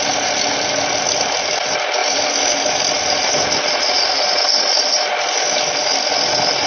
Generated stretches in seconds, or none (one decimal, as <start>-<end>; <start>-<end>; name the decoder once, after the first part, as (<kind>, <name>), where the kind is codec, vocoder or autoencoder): none